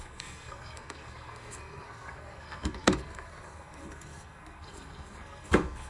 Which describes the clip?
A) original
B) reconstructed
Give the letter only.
B